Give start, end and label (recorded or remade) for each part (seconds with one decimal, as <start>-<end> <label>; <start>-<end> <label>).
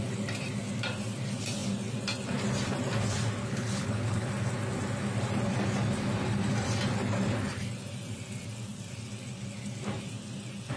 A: 0.0-3.4 recorded; 3.4-4.3 remade; 4.3-10.8 recorded